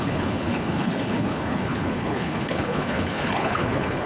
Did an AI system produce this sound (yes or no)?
yes